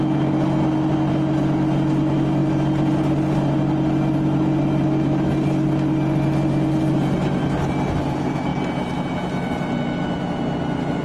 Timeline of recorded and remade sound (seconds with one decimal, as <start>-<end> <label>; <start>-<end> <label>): 0.0-11.0 recorded